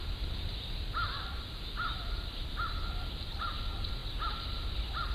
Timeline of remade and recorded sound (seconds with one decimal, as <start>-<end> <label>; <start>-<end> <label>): 0.0-5.1 recorded